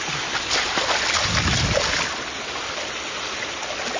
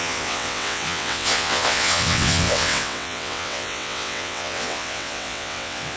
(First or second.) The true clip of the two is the first